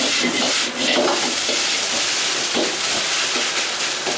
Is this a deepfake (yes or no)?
yes